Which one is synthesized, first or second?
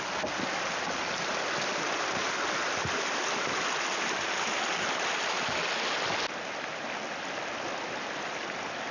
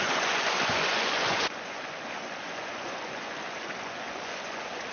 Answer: second